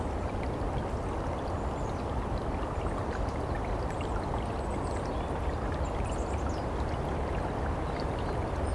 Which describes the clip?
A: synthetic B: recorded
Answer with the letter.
B